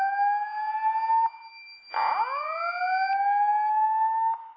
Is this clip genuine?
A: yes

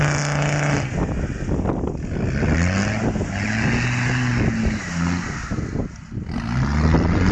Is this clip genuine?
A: yes